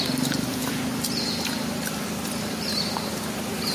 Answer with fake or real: fake